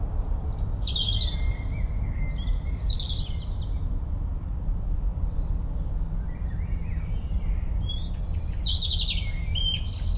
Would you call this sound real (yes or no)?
yes